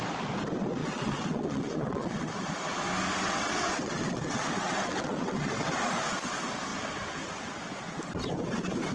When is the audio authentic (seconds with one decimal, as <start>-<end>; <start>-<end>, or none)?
0.0-0.8; 2.3-3.1; 5.9-8.9